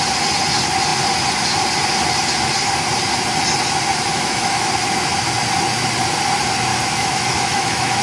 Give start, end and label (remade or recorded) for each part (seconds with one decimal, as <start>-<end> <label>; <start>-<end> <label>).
0.0-4.1 recorded; 4.1-4.7 remade; 4.7-6.7 recorded; 6.7-8.0 remade